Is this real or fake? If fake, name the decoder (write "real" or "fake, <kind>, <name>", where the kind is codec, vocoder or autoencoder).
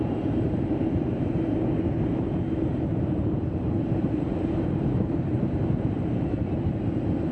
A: fake, vocoder, BigVGAN v2